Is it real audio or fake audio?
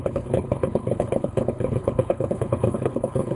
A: fake